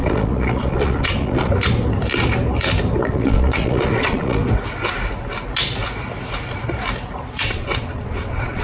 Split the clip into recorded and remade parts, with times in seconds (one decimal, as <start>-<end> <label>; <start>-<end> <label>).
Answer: 0.0-1.5 remade; 1.5-3.0 recorded; 3.0-4.4 remade; 4.4-7.3 recorded; 7.3-8.6 remade